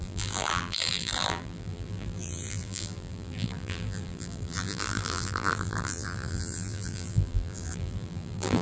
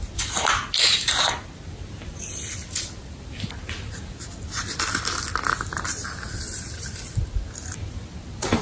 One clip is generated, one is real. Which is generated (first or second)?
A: first